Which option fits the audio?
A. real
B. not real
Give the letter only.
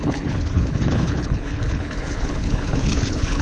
B